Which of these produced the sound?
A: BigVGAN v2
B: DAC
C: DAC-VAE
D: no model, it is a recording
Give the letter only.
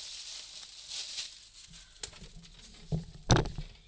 D